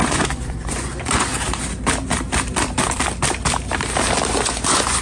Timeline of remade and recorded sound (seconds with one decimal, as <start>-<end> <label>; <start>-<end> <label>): 0.0-1.3 remade; 1.3-4.3 recorded; 4.3-5.0 remade